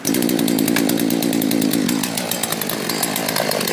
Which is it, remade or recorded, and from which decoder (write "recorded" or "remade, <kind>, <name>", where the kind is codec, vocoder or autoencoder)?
recorded